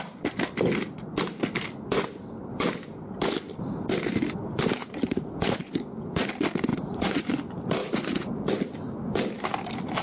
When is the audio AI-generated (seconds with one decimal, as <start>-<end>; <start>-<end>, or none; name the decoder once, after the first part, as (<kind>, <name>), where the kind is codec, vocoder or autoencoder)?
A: 4.8-6.3 (vocoder, Vocos); 6.7-7.3; 7.8-8.5